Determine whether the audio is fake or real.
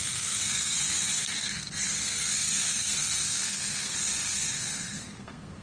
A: fake